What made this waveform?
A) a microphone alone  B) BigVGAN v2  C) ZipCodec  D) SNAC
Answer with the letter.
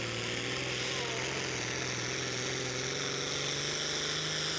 A